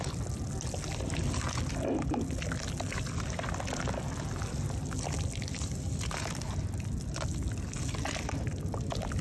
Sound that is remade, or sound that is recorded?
recorded